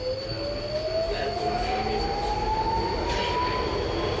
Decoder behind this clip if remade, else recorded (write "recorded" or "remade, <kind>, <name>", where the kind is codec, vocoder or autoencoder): recorded